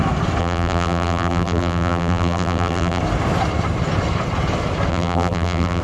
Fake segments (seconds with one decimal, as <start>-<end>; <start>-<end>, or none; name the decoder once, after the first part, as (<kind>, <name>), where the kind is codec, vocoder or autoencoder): 0.4-3.0 (vocoder, BigVGAN v2); 4.9-5.8